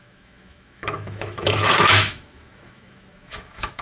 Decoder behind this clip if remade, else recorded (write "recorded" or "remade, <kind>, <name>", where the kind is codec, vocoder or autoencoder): remade, autoencoder, DAC-VAE